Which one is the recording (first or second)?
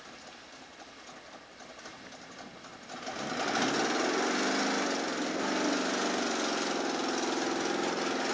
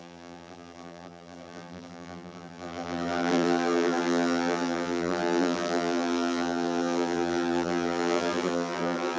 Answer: first